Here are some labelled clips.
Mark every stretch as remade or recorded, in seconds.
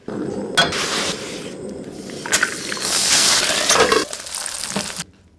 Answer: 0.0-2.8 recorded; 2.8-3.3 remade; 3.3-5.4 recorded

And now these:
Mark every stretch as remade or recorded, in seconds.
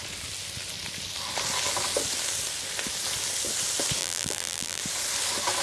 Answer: 0.0-4.0 recorded; 4.0-4.8 remade; 4.8-5.6 recorded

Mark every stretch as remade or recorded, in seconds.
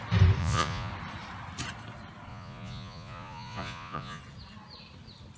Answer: 0.0-0.4 recorded; 0.4-0.9 remade; 0.9-2.3 recorded; 2.3-4.2 remade; 4.2-5.4 recorded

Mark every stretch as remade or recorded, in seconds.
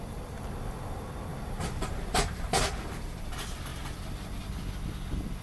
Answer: 0.0-1.3 recorded; 1.3-3.2 remade; 3.2-3.7 recorded; 3.7-4.5 remade; 4.5-5.4 recorded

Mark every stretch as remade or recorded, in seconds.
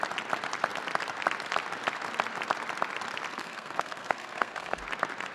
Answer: 0.0-3.3 recorded; 3.3-4.8 remade; 4.8-5.3 recorded